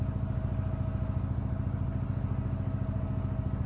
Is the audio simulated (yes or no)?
no